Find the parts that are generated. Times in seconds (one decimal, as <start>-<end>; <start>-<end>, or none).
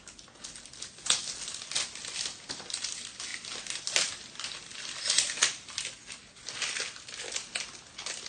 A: 3.3-4.7